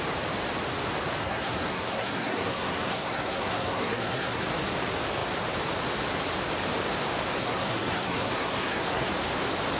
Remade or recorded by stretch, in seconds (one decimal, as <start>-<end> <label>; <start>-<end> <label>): 0.0-1.2 recorded; 1.2-4.5 remade; 4.5-7.4 recorded; 7.4-9.1 remade; 9.1-9.8 recorded